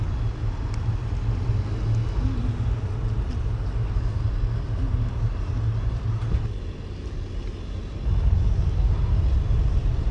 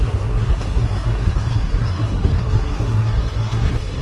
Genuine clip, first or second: first